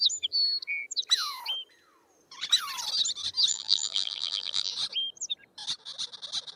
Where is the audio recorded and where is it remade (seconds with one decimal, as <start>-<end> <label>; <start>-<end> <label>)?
0.0-3.5 recorded; 3.5-4.7 remade; 4.7-6.6 recorded